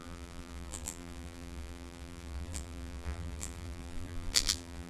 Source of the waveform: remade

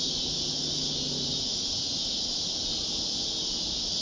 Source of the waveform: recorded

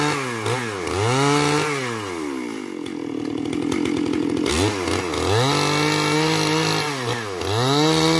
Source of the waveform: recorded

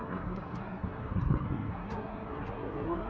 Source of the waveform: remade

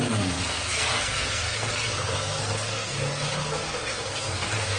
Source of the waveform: remade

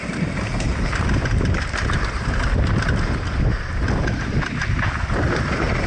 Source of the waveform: recorded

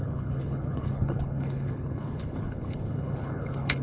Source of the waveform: remade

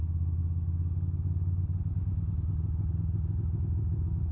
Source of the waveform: recorded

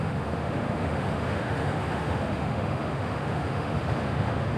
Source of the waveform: remade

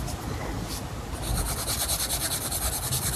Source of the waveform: recorded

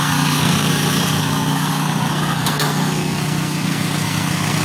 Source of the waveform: remade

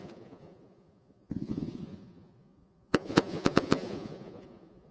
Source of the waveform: remade